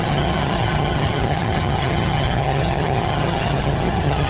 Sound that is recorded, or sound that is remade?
remade